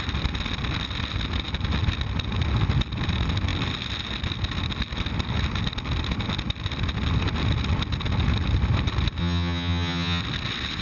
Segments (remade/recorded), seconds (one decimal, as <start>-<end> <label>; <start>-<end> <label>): 0.0-9.2 recorded; 9.2-10.2 remade; 10.2-10.8 recorded